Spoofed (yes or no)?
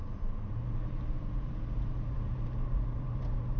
yes